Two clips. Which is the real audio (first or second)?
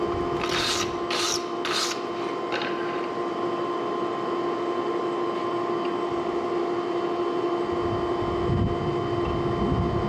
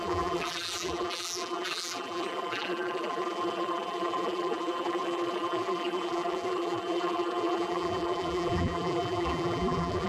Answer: first